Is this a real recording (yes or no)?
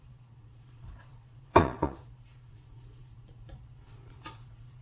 no